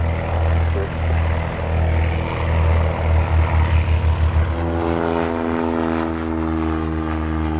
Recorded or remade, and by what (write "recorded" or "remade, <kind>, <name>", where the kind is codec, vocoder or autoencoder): recorded